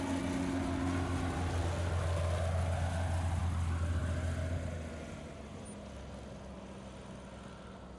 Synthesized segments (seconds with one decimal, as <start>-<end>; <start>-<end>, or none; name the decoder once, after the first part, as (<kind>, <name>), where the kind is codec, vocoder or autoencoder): none